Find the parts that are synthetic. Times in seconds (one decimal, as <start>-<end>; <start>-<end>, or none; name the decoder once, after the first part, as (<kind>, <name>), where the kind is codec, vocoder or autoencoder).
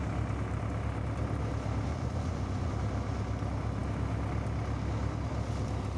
1.9-2.7 (vocoder, Vocos)